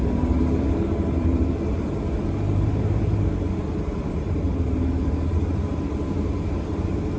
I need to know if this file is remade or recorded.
remade